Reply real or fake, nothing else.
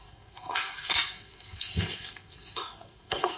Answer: fake